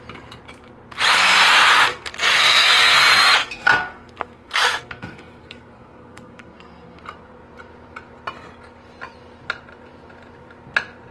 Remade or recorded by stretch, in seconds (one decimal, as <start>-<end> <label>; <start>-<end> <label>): 0.0-1.9 recorded; 1.9-3.0 remade; 3.0-3.4 recorded; 3.4-7.0 remade; 7.0-11.1 recorded